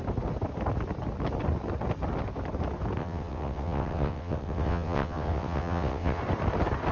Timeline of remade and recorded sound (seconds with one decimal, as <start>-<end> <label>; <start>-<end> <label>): 0.0-3.0 recorded; 3.0-6.2 remade; 6.2-6.9 recorded